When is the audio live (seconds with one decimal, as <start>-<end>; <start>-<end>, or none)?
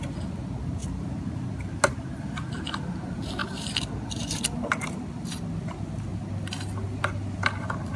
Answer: 0.0-0.8; 1.5-3.4; 4.4-8.0